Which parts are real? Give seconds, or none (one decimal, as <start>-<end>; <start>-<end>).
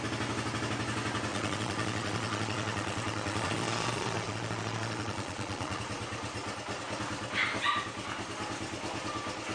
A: 0.0-1.3; 5.8-9.5